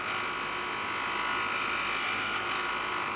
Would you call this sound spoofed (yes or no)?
no